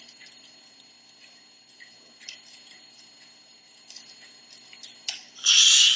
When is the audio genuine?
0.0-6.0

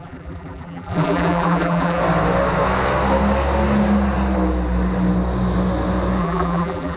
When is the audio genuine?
2.0-6.2